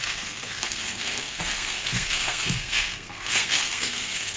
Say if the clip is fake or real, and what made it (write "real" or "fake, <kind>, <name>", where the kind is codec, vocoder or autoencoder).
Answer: fake, codec, SNAC